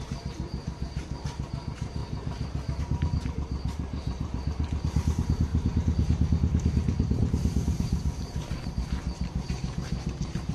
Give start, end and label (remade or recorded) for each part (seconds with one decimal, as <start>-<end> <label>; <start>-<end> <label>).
0.0-10.5 remade